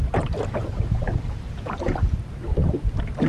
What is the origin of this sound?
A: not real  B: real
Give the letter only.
A